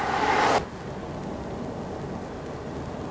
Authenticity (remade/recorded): recorded